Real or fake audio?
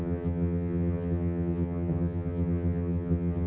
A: fake